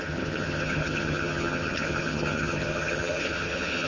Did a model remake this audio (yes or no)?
yes